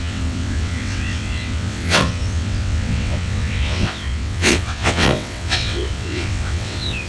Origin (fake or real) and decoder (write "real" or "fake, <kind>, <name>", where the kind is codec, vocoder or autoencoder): fake, vocoder, WaveNeXt